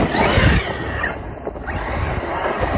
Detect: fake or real real